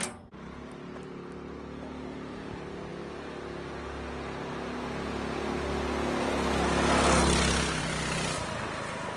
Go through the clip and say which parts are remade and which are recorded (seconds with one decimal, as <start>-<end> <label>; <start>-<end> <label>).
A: 0.0-9.2 recorded